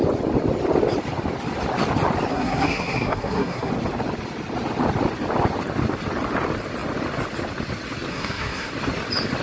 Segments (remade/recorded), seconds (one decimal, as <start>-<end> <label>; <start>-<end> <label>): 0.0-2.3 recorded; 2.3-3.7 remade; 3.7-8.1 recorded; 8.1-8.7 remade; 8.7-9.4 recorded